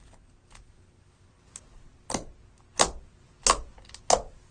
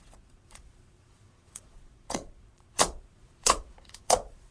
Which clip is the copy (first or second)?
second